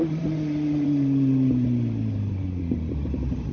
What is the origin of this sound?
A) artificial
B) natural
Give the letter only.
A